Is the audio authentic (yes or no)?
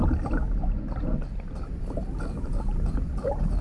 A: yes